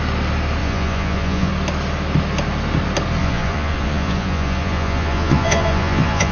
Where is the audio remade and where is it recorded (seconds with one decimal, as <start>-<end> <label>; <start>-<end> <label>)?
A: 0.0-0.6 recorded; 0.6-1.5 remade; 1.5-3.2 recorded; 3.2-6.3 remade